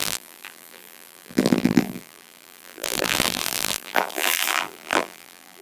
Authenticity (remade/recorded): remade